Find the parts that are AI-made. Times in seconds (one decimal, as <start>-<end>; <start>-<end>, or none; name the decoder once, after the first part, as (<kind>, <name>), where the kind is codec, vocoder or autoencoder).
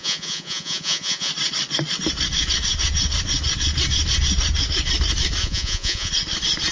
0.0-1.3 (vocoder, Vocos); 5.4-6.1